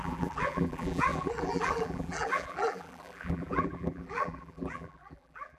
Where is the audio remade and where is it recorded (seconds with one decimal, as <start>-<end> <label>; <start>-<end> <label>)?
0.0-5.6 remade